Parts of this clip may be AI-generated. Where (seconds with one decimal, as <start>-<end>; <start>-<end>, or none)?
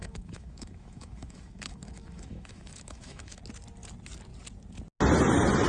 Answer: 0.0-3.4